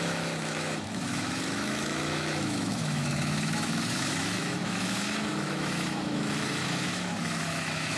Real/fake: fake